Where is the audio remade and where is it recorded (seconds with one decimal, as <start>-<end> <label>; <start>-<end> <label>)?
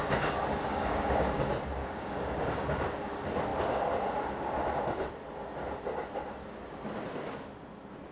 0.0-0.7 recorded; 0.7-1.4 remade; 1.4-1.8 recorded; 1.8-3.1 remade; 3.1-8.1 recorded